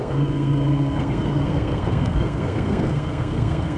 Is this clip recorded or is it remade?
remade